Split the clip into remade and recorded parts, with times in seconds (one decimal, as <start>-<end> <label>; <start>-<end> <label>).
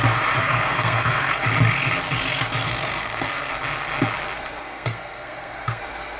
0.0-0.4 recorded; 0.4-1.4 remade; 1.4-2.6 recorded; 2.6-3.5 remade; 3.5-4.6 recorded; 4.6-5.8 remade; 5.8-6.2 recorded